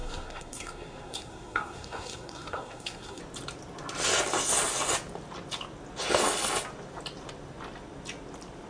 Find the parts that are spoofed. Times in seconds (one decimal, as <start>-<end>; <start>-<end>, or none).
0.0-3.2